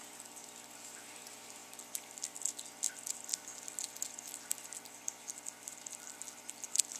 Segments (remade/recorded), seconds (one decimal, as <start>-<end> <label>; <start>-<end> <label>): 0.0-7.0 recorded